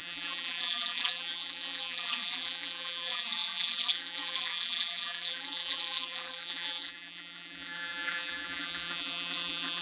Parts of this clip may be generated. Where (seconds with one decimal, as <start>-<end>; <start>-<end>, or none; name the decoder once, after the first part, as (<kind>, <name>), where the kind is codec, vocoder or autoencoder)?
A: 0.0-9.8 (vocoder, BigVGAN v2)